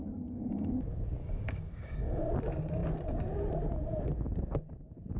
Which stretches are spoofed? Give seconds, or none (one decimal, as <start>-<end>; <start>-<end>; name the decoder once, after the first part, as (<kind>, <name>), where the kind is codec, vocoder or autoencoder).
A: 0.0-0.7 (codec, DAC); 1.2-2.2